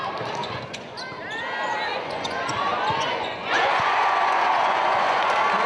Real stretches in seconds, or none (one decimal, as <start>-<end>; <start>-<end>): 0.0-0.4; 1.0-1.9; 5.3-5.7